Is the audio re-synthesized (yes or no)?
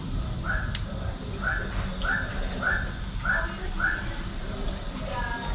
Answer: no